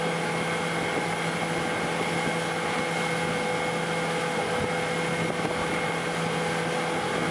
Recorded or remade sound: recorded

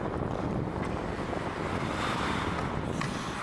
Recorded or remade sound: recorded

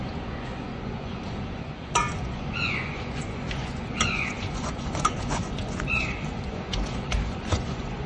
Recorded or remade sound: remade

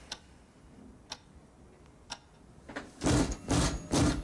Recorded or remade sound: recorded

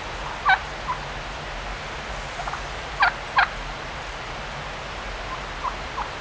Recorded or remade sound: recorded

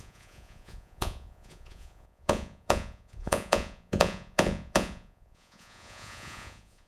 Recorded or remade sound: remade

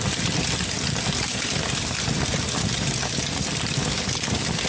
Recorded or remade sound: recorded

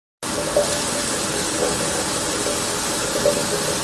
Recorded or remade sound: recorded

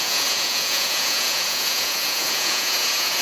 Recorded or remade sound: remade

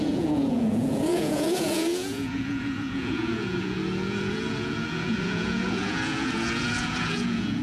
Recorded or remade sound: remade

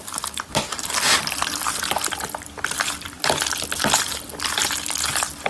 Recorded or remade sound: recorded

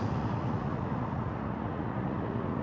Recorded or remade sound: remade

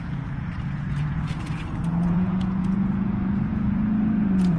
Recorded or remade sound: remade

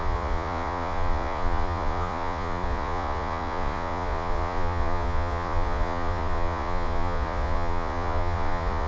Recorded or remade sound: remade